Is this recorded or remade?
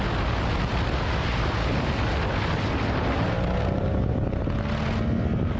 recorded